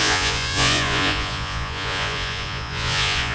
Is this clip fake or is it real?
fake